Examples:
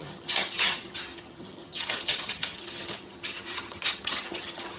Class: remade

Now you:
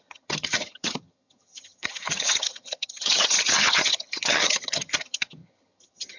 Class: remade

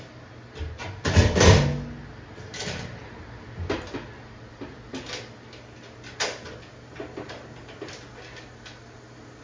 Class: recorded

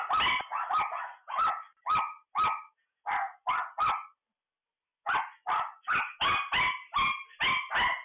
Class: recorded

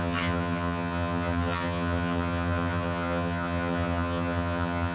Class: remade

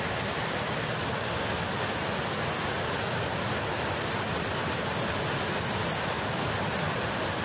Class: recorded